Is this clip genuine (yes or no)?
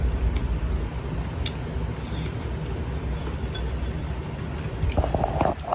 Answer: yes